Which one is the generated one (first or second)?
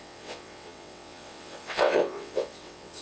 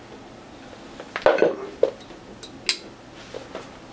first